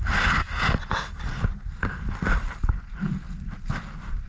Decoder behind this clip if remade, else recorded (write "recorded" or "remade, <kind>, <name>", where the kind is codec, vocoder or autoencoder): recorded